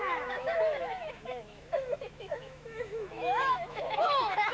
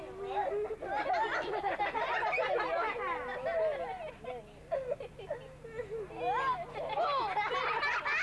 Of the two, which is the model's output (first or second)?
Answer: first